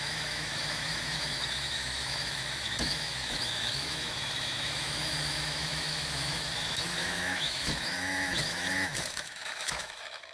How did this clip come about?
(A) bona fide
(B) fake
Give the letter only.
B